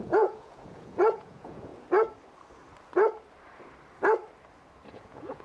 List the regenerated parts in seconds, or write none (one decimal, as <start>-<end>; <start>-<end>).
0.0-1.7; 4.9-5.4